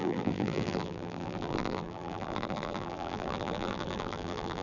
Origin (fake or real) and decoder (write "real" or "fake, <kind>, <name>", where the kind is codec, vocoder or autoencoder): fake, vocoder, BigVGAN v2